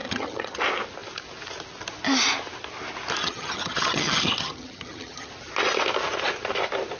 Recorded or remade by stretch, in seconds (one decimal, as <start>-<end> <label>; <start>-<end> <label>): 0.0-0.6 remade; 0.6-3.2 recorded; 3.2-5.3 remade; 5.3-7.0 recorded